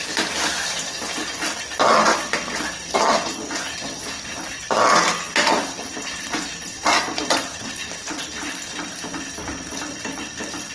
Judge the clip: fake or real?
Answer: real